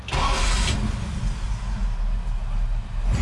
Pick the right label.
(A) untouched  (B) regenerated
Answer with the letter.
A